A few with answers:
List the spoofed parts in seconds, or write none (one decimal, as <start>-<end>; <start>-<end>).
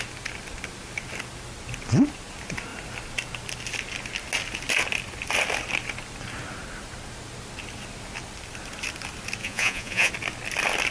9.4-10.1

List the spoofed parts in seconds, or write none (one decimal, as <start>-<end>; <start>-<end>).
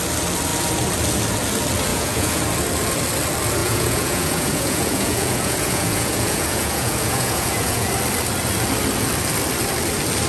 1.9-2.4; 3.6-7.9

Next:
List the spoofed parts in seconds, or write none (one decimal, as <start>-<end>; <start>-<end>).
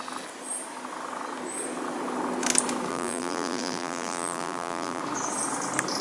2.9-5.0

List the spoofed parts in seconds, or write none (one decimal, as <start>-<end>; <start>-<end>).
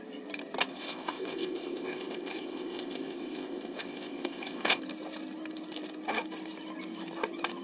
0.7-4.8